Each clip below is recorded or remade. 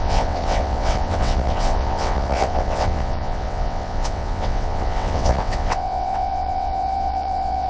remade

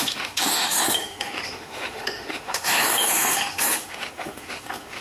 remade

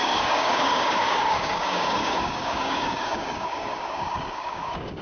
remade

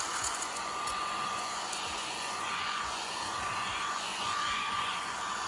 remade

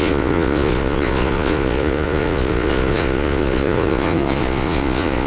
remade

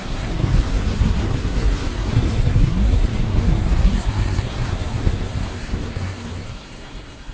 remade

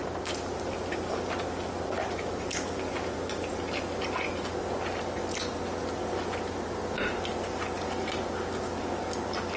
recorded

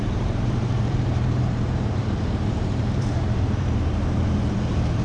remade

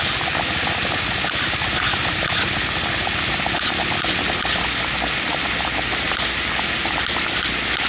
recorded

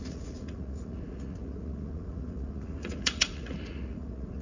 remade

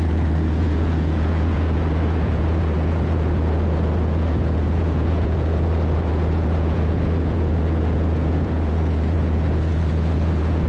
remade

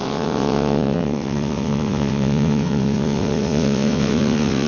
remade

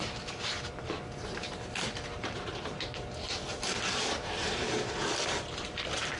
remade